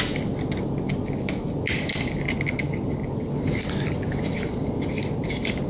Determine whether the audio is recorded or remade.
recorded